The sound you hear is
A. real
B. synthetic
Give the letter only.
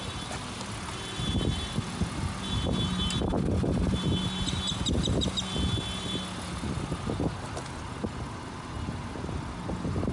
A